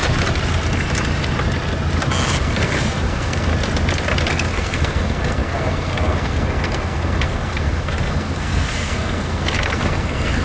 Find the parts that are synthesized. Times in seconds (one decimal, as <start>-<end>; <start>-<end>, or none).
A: 2.2-3.5; 4.3-10.4